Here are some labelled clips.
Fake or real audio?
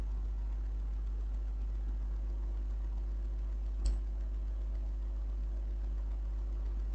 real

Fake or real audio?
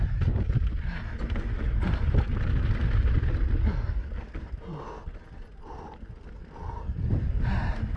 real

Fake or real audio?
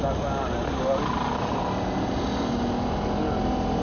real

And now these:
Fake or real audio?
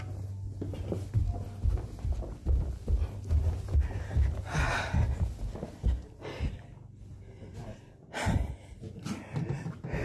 real